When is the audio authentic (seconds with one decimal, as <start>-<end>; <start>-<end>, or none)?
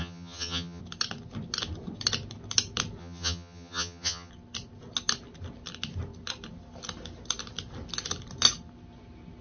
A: 0.8-3.0; 4.3-9.4